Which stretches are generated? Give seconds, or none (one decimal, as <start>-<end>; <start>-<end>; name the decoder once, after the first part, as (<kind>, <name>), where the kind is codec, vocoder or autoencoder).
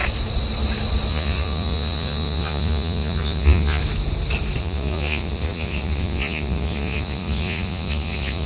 1.1-3.8 (vocoder, Vocos); 4.6-8.5